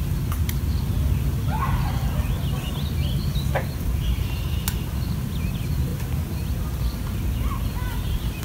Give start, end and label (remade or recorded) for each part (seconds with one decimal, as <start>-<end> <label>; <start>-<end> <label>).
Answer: 0.0-8.4 recorded